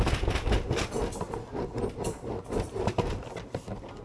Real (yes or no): yes